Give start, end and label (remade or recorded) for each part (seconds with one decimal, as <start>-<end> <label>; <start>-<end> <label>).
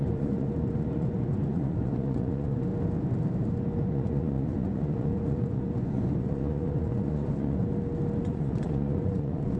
0.0-2.7 remade; 2.7-3.8 recorded; 3.8-7.6 remade; 7.6-8.2 recorded; 8.2-9.6 remade